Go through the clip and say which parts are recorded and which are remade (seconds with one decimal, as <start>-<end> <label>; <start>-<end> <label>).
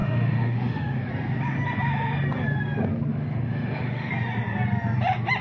0.0-1.1 remade; 1.1-3.1 recorded; 3.1-4.1 remade; 4.1-5.4 recorded